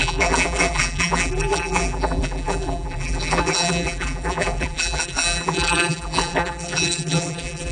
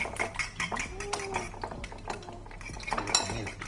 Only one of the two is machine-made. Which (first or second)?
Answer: first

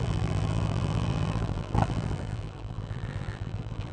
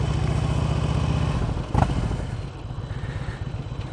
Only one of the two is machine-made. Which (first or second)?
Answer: first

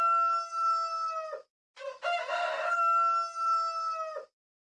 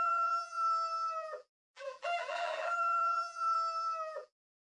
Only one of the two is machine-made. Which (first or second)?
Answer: second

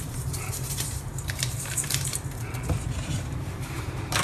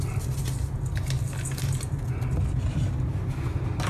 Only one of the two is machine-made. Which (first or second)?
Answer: first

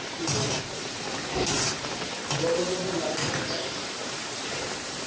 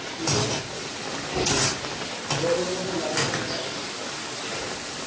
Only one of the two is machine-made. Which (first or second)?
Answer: first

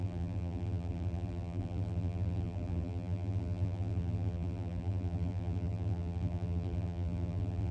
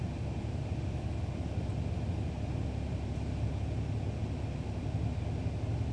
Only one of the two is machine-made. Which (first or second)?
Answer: first